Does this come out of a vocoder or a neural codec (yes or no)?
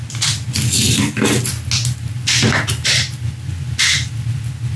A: no